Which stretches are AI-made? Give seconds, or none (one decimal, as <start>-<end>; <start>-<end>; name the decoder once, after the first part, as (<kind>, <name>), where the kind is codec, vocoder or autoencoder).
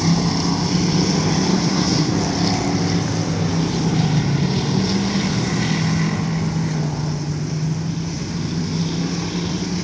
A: 1.5-2.1 (codec, SNAC)